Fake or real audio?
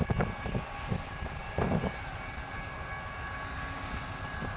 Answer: real